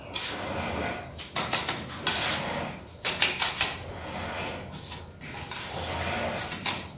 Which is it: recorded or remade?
recorded